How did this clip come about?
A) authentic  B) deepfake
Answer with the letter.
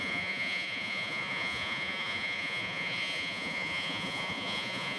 B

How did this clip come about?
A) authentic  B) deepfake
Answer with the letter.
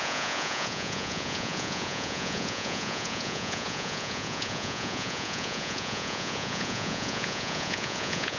B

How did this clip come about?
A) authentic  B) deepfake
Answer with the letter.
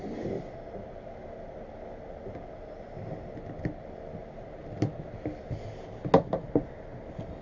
A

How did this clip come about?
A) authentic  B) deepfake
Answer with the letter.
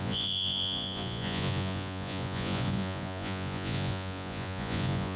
B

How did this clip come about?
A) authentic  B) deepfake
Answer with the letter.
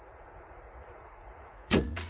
B